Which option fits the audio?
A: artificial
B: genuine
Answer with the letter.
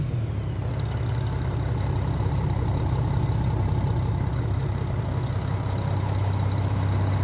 B